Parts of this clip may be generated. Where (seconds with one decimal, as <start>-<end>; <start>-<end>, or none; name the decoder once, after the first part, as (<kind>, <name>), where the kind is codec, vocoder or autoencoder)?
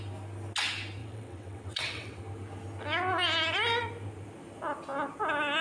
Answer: 1.0-2.2 (vocoder, WaveNeXt)